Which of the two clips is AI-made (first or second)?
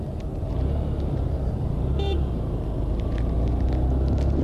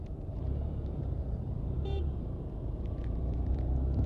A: second